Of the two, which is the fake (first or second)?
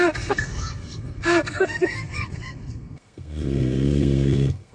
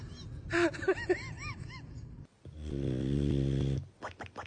first